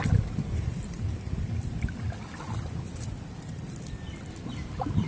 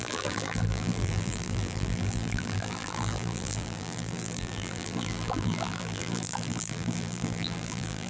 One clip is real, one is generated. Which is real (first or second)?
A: first